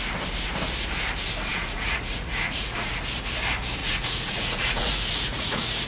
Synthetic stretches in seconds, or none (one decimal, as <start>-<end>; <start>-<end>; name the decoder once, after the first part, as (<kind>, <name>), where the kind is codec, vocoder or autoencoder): 1.5-2.9 (vocoder, Vocos); 3.8-5.9